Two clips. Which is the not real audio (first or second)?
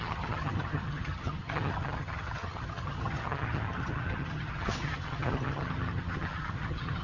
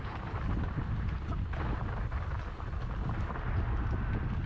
first